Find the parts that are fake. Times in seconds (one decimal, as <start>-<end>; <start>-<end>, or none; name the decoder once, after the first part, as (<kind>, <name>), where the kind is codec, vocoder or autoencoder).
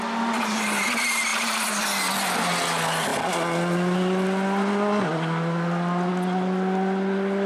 1.3-1.8 (vocoder, BigVGAN v2)